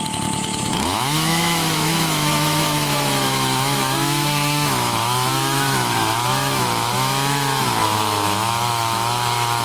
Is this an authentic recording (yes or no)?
no